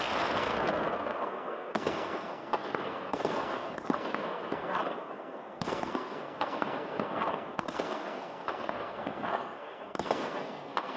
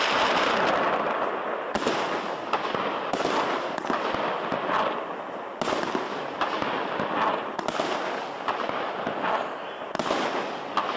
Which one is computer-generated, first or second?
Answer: first